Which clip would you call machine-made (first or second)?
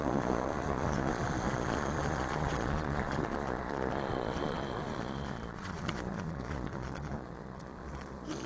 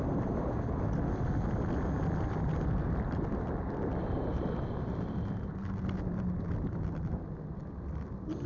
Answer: first